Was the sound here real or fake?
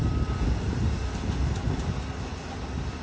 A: real